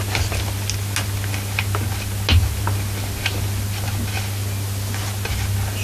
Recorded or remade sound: recorded